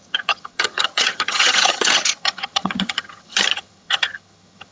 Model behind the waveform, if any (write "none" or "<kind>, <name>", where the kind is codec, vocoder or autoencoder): vocoder, HiFi-GAN